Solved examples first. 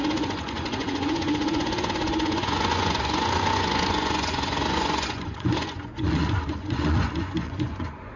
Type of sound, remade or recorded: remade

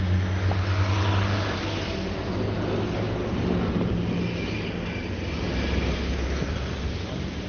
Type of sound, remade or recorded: recorded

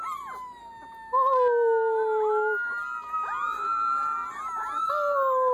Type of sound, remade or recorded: recorded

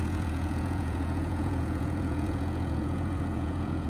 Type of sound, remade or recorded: remade